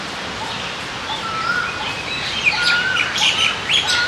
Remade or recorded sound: recorded